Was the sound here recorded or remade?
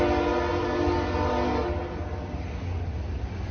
recorded